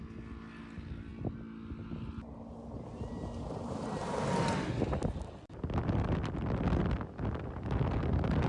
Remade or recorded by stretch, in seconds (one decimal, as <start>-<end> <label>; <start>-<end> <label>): 0.0-8.5 recorded